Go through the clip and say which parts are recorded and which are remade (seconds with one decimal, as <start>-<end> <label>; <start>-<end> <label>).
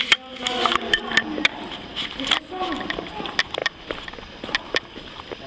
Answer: 0.0-5.5 recorded